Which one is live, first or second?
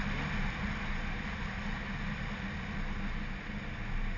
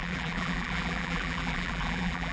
first